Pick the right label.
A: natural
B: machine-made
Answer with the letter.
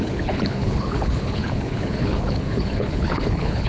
B